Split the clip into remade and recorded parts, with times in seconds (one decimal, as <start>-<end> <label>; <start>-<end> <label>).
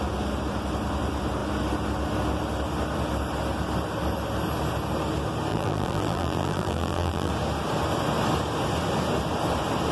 0.0-5.5 recorded; 5.5-7.3 remade; 7.3-9.9 recorded